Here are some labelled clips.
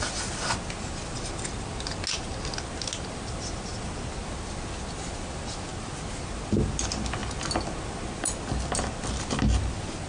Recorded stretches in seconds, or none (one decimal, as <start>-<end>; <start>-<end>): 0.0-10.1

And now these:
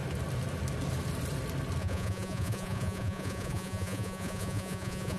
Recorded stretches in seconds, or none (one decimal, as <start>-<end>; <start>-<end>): 0.0-1.8

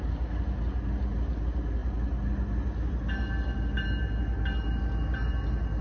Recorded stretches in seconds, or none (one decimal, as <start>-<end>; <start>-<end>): 0.0-5.8